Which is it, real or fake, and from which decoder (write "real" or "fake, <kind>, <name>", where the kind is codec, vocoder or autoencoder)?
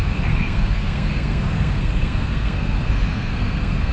fake, codec, SNAC